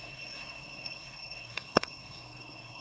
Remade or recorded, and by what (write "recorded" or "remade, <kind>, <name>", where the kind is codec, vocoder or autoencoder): remade, codec, SNAC